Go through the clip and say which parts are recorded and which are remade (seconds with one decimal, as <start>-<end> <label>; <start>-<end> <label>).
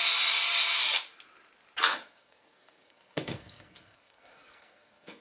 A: 0.0-1.8 recorded; 1.8-5.2 remade